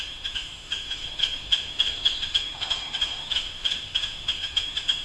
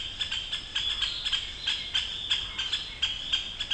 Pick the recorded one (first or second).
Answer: second